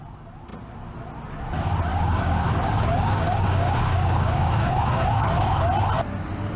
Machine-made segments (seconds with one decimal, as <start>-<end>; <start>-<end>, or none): 1.9-5.6